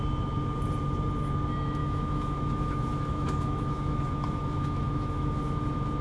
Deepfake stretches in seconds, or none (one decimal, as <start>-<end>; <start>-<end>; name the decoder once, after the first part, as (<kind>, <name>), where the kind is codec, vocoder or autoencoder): 1.8-5.4 (autoencoder, DAC-VAE)